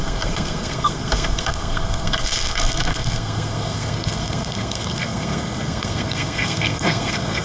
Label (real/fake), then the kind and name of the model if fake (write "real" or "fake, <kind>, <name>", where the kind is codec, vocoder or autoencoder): fake, codec, SNAC